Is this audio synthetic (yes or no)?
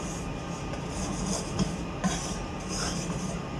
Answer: no